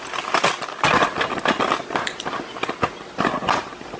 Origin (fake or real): real